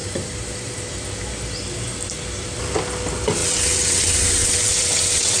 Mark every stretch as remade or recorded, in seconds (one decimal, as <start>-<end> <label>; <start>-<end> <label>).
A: 0.0-3.4 recorded; 3.4-5.4 remade